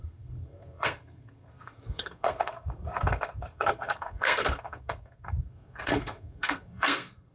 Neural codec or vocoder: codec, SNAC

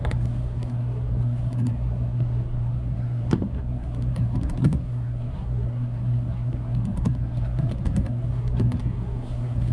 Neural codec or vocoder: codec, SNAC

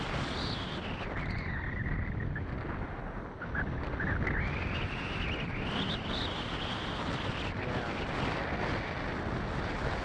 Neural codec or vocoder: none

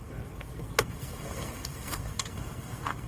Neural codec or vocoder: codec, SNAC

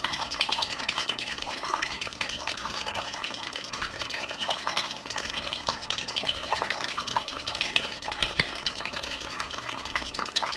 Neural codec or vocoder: codec, SNAC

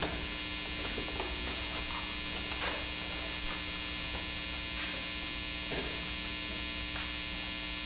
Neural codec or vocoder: none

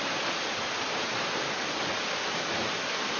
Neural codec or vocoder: none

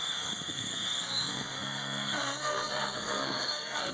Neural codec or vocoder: codec, SNAC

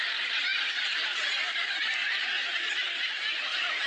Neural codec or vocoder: none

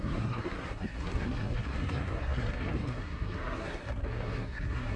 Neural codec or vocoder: codec, SNAC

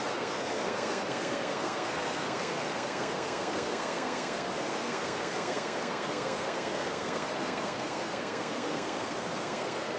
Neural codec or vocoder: codec, SNAC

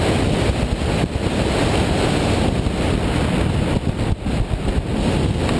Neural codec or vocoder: none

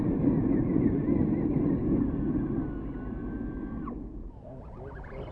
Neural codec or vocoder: none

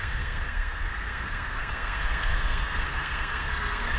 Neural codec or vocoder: codec, SNAC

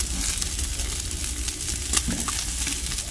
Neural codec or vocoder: none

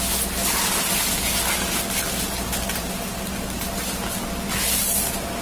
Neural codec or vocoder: none